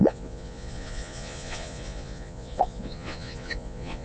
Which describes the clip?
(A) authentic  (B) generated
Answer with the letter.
B